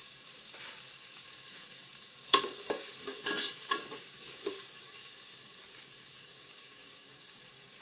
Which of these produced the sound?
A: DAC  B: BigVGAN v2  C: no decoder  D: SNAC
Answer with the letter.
A